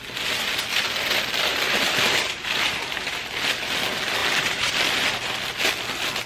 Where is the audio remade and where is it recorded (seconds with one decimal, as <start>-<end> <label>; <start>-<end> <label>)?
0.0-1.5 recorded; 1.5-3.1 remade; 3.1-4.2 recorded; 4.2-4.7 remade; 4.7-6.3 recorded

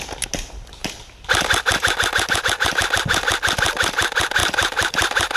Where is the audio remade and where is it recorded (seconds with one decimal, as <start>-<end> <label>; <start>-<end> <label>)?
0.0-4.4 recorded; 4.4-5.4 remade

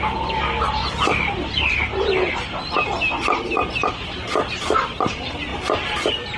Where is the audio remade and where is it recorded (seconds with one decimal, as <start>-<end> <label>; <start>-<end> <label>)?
0.0-0.8 recorded; 0.8-2.3 remade; 2.3-6.4 recorded

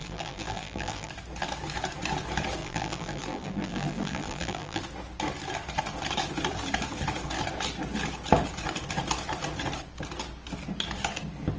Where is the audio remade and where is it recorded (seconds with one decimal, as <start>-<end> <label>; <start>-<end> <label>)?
0.0-1.1 remade; 1.1-2.6 recorded; 2.6-4.8 remade; 4.8-11.6 recorded